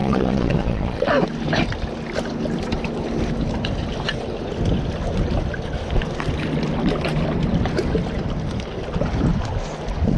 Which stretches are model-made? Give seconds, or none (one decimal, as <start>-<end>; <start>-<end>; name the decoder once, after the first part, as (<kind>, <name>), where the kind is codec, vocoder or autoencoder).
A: 0.0-1.1 (vocoder, Vocos)